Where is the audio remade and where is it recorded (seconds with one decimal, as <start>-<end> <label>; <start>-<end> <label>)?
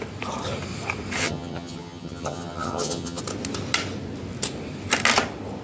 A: 0.0-1.2 recorded; 1.2-3.2 remade; 3.2-5.6 recorded